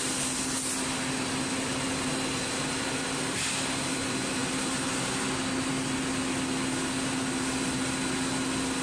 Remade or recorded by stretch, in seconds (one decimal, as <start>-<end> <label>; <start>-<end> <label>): 0.0-8.8 recorded